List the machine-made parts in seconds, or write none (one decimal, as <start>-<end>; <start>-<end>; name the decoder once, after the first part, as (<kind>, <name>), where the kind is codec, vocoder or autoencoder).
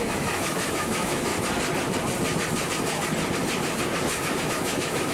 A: 0.0-1.3 (autoencoder, DAC-VAE); 4.4-5.1